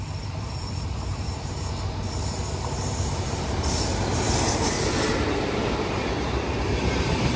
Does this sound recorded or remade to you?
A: remade